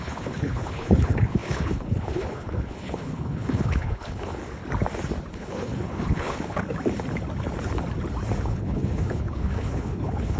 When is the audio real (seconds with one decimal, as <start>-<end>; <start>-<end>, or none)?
4.4-5.3; 6.6-8.4